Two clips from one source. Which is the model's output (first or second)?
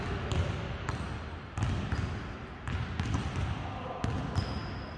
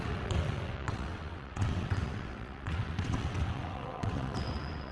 second